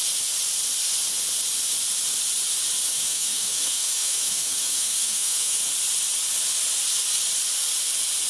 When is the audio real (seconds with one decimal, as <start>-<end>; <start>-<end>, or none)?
0.0-2.9; 5.6-8.3